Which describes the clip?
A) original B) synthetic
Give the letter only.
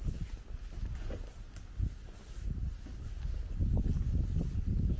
A